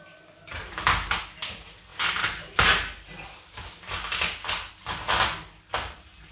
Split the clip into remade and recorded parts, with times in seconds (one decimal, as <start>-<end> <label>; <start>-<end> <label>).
0.0-6.3 recorded